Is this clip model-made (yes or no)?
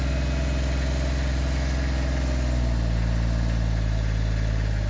no